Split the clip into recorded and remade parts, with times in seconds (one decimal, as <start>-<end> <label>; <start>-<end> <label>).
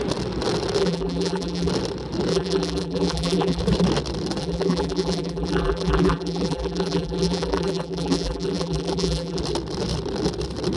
0.0-0.8 recorded; 0.8-1.7 remade; 1.7-2.3 recorded; 2.3-3.6 remade; 3.6-4.4 recorded; 4.4-9.4 remade; 9.4-10.8 recorded